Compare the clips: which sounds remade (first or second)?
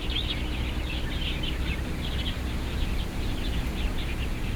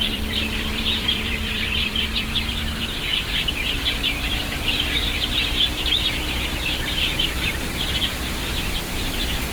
second